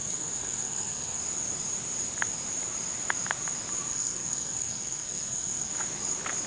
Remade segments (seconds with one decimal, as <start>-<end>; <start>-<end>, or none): 0.0-1.2; 3.9-5.7